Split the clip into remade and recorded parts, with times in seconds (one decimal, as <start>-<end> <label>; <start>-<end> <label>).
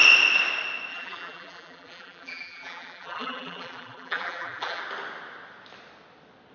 0.0-0.9 recorded; 0.9-4.8 remade; 4.8-6.5 recorded